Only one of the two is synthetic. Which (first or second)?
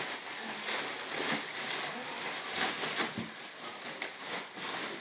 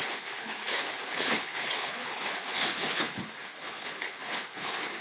second